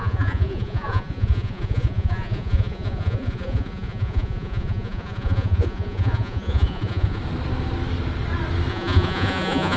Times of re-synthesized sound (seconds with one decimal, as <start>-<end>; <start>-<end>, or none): 0.0-7.2; 8.7-9.8